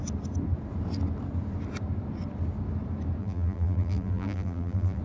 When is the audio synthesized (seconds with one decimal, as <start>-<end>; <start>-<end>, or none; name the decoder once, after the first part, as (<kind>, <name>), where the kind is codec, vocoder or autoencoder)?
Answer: 3.2-5.0 (vocoder, BigVGAN v2)